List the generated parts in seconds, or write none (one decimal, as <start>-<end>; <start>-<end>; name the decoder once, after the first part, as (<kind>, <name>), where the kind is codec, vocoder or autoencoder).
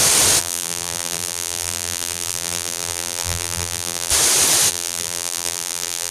0.4-4.1 (vocoder, BigVGAN v2); 4.7-6.1